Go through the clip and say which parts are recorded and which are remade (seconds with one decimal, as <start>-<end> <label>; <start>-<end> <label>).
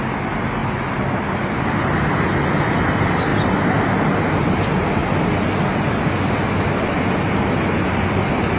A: 0.0-8.6 recorded